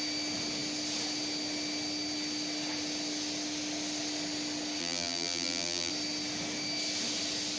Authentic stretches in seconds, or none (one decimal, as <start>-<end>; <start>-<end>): 0.0-4.8; 5.9-7.6